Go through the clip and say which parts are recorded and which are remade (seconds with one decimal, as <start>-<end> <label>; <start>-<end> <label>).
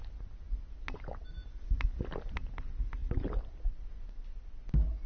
0.0-5.1 recorded